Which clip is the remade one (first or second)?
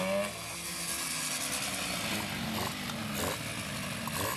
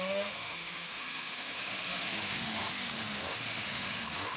second